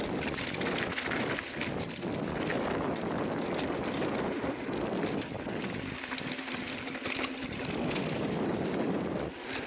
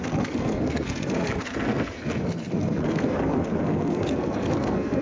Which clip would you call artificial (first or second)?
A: second